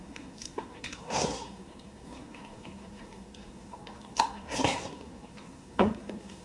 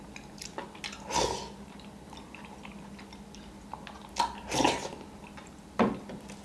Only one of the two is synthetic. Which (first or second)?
first